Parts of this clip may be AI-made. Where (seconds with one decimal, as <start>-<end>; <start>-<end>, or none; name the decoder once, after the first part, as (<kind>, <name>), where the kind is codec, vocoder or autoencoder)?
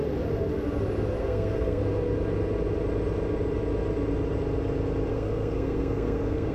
1.2-1.8 (codec, SNAC); 5.1-6.5